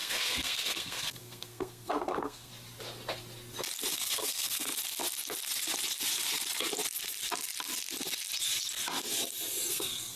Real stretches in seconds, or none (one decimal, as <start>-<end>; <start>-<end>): 2.5-3.9; 4.7-9.7